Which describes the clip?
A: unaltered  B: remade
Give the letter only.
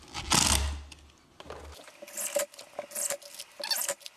A